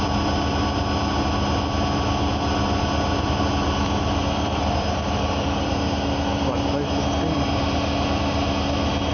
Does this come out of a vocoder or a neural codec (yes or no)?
no